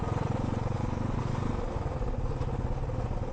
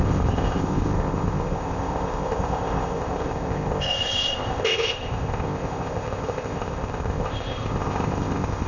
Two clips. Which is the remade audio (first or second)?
second